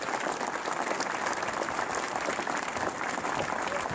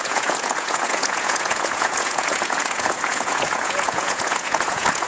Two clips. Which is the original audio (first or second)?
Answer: first